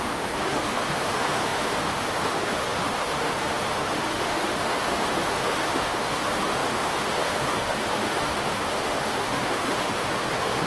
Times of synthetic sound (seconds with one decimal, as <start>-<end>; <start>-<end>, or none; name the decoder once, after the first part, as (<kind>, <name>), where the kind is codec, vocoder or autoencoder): 0.0-10.7 (autoencoder, DAC-VAE)